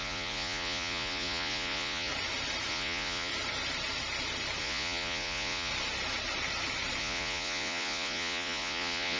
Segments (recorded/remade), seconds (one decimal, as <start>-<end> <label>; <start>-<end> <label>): 0.0-2.1 remade; 2.1-2.7 recorded; 2.7-3.3 remade; 3.3-4.6 recorded; 4.6-5.7 remade; 5.7-7.0 recorded; 7.0-9.2 remade